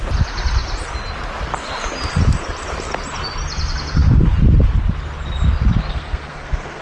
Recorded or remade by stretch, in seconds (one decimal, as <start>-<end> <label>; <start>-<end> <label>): 0.0-5.9 recorded; 5.9-6.8 remade